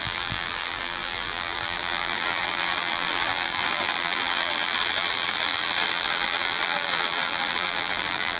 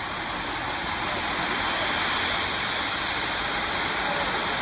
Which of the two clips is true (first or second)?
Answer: second